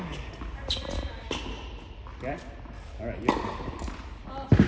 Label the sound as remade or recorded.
recorded